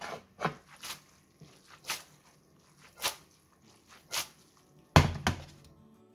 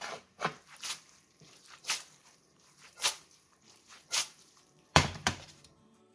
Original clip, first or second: first